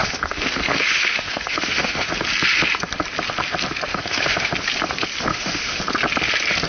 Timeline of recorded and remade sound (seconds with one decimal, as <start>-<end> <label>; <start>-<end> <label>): 0.0-2.1 remade; 2.1-3.9 recorded; 3.9-4.5 remade; 4.5-5.3 recorded; 5.3-5.8 remade; 5.8-6.7 recorded